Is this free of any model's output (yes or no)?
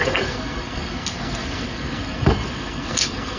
no